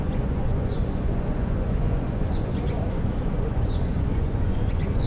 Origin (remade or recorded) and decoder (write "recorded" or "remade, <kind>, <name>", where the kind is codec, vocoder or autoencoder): remade, vocoder, Vocos